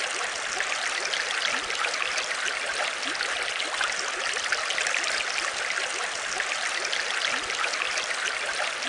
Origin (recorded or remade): recorded